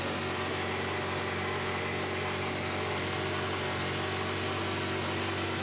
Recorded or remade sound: recorded